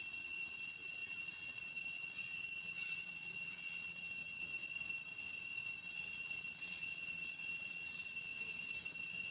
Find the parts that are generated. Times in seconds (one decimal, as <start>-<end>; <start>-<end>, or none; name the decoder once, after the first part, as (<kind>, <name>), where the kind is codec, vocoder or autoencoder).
0.0-4.6 (vocoder, Vocos); 6.0-8.3